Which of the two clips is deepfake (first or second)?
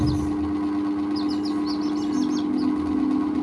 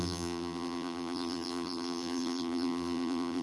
second